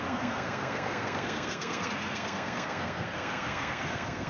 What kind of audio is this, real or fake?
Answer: fake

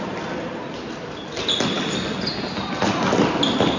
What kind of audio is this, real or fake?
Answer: real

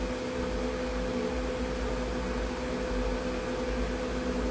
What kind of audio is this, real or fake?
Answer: real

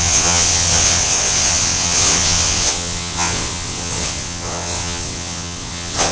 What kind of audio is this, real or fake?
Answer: fake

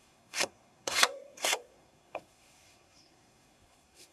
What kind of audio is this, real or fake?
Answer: fake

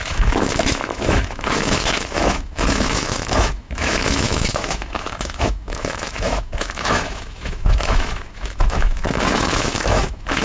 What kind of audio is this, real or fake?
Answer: fake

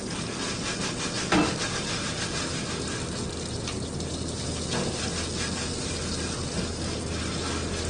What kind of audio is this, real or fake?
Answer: real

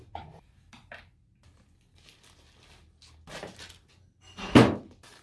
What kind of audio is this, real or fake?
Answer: real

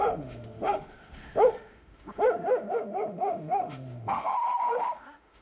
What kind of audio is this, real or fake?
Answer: fake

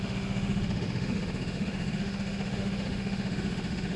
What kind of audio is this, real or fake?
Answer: fake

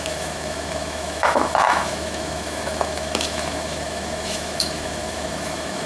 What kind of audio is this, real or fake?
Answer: fake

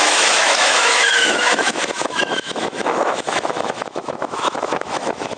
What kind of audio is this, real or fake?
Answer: fake